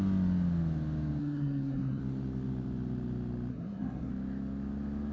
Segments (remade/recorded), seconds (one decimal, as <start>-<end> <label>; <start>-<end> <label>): 0.0-1.2 recorded; 1.2-2.0 remade; 2.0-3.5 recorded; 3.5-4.1 remade; 4.1-5.1 recorded